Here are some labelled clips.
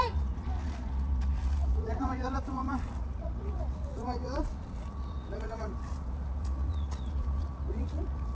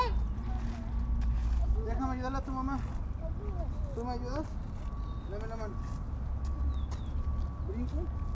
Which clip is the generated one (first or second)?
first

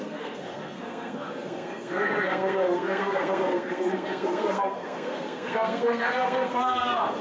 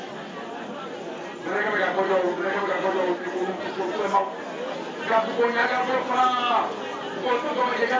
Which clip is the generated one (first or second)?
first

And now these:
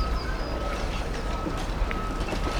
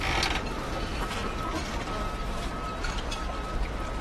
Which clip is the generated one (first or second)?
first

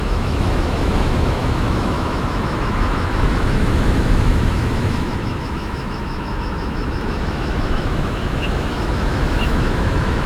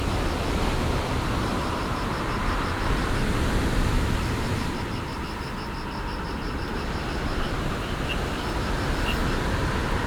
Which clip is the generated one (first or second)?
first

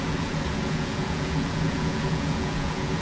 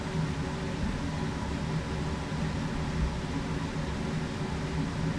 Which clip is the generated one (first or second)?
first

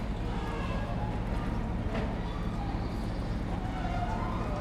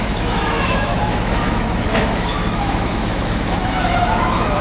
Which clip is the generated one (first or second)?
second